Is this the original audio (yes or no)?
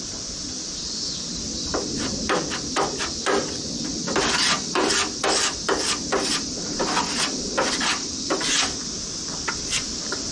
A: no